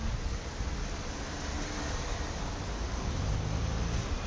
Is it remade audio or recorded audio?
recorded